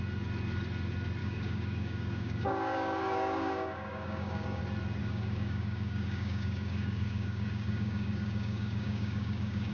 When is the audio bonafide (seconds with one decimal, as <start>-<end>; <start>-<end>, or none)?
0.0-1.2; 4.6-5.0